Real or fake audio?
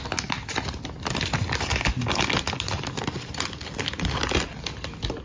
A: real